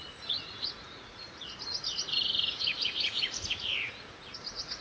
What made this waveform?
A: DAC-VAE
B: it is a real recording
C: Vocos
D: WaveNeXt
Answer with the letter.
C